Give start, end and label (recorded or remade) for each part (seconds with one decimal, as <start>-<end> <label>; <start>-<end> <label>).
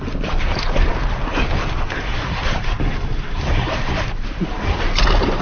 0.0-0.9 remade; 0.9-2.1 recorded; 2.1-5.4 remade